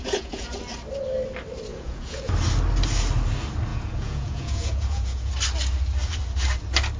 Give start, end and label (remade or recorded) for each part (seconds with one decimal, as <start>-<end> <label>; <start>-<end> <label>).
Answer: 0.0-0.6 remade; 0.6-1.7 recorded; 1.7-2.3 remade; 2.3-3.7 recorded; 3.7-5.3 remade; 5.3-7.0 recorded